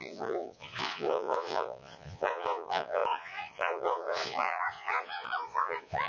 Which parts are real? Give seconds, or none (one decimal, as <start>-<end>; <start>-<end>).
none